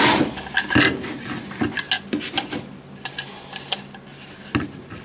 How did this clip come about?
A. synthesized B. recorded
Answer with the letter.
B